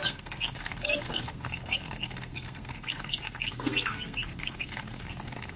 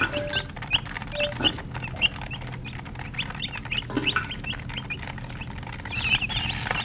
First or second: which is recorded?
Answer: second